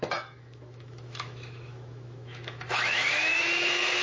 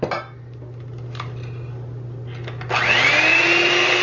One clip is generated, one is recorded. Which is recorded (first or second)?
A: second